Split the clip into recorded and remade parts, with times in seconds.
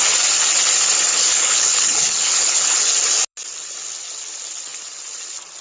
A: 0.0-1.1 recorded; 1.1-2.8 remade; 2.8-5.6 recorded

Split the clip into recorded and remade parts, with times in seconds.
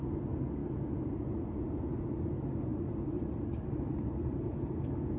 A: 0.0-2.7 recorded; 2.7-4.7 remade; 4.7-5.2 recorded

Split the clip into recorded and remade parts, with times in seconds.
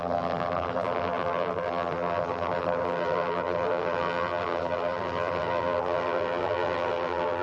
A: 0.0-7.4 remade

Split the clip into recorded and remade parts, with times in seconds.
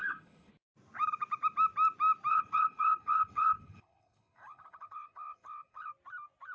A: 0.0-0.5 remade; 0.5-2.3 recorded; 2.3-5.9 remade; 5.9-6.5 recorded